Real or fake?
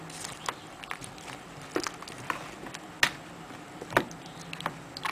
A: real